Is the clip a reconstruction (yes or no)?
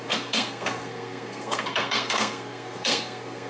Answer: yes